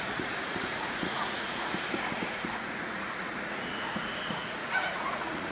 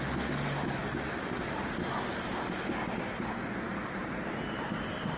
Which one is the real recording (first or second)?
second